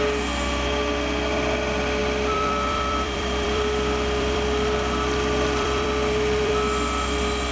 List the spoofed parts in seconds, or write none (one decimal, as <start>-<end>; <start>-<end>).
2.0-6.5